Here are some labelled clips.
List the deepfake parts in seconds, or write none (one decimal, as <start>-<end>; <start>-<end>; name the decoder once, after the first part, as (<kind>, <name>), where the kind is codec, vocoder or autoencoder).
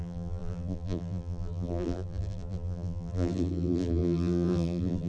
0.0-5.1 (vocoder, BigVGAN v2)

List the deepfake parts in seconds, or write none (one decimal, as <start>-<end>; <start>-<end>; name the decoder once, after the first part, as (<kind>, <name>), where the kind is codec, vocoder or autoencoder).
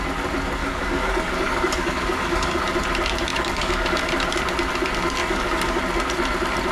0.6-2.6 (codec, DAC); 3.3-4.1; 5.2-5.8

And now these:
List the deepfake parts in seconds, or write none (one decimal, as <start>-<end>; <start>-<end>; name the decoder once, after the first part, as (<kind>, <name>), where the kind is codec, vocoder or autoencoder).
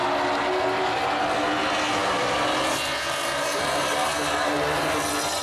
none